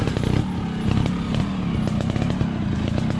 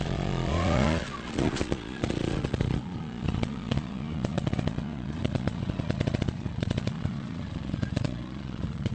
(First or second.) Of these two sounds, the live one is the first